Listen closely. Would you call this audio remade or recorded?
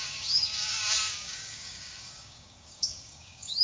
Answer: remade